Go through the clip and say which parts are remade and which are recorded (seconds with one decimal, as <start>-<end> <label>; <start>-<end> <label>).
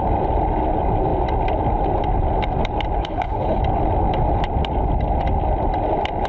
0.0-3.0 recorded; 3.0-3.6 remade; 3.6-6.3 recorded